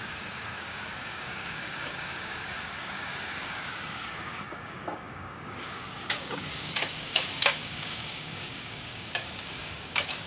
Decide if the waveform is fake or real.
fake